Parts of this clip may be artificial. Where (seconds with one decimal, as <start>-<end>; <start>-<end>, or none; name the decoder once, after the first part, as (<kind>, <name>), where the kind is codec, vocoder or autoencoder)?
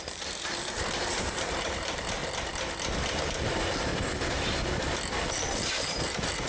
0.0-2.2 (vocoder, BigVGAN v2); 3.3-3.9; 5.1-6.5